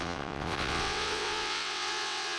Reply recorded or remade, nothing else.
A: remade